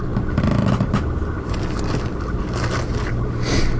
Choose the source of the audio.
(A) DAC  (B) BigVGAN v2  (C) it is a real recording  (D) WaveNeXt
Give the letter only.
C